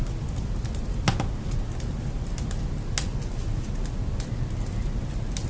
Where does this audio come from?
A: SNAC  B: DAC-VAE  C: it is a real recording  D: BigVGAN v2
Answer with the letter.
C